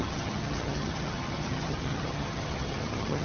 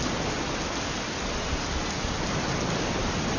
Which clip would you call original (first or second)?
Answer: second